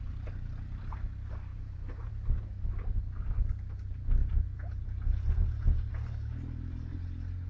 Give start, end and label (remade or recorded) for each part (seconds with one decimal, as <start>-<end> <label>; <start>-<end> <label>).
0.0-1.5 recorded; 1.5-2.1 remade; 2.1-4.2 recorded; 4.2-5.9 remade; 5.9-7.5 recorded

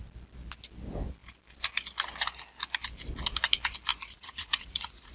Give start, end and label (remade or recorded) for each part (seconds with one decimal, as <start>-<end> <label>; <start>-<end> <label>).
0.0-3.9 recorded; 3.9-5.1 remade

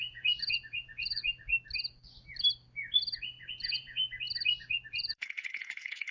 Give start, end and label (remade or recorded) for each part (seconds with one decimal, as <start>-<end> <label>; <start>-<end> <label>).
0.0-1.2 remade; 1.2-3.5 recorded; 3.5-4.0 remade; 4.0-4.9 recorded; 4.9-6.1 remade

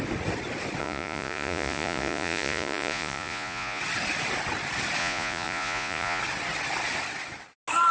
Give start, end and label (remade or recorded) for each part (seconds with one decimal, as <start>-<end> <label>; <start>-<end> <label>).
0.0-0.8 recorded; 0.8-3.8 remade; 3.8-5.0 recorded; 5.0-6.2 remade; 6.2-7.9 recorded

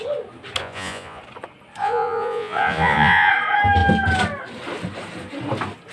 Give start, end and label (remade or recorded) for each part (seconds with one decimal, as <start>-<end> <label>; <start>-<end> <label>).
0.0-0.6 recorded; 0.6-1.2 remade; 1.2-1.8 recorded; 1.8-3.3 remade; 3.3-5.9 recorded

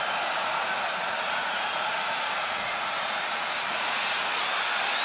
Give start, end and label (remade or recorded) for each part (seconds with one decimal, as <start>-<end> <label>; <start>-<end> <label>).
0.0-0.4 recorded; 0.4-2.9 remade; 2.9-3.7 recorded; 3.7-4.2 remade; 4.2-5.0 recorded

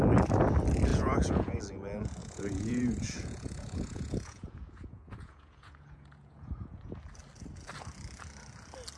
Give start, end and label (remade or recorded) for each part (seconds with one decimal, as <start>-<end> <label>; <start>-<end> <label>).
0.0-0.9 recorded; 0.9-1.6 remade; 1.6-2.2 recorded; 2.2-7.0 remade; 7.0-9.0 recorded

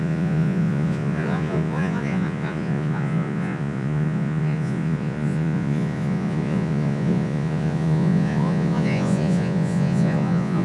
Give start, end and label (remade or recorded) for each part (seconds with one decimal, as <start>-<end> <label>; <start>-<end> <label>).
0.0-10.6 remade